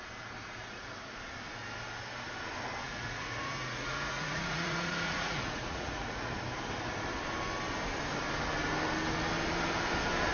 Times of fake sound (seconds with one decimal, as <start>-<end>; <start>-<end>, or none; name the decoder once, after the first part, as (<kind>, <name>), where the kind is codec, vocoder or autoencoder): 0.4-1.2 (vocoder, Vocos); 2.8-6.3